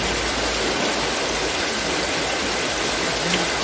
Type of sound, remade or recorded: recorded